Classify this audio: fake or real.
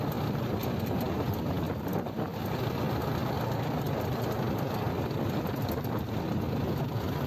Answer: real